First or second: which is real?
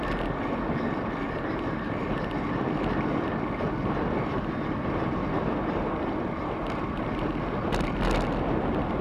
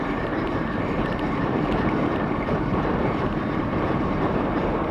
first